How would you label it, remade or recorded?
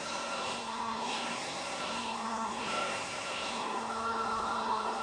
remade